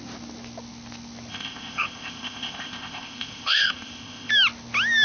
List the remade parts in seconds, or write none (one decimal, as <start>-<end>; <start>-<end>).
1.3-4.3